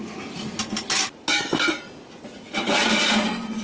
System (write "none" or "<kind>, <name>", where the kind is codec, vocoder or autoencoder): none